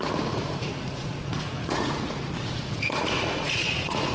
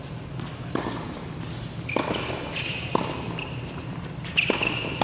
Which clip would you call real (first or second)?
second